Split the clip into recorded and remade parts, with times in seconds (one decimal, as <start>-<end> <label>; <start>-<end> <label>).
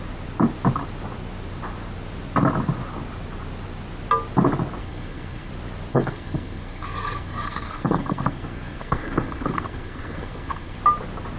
0.0-4.8 recorded; 4.8-5.5 remade; 5.5-5.9 recorded; 5.9-10.8 remade; 10.8-11.4 recorded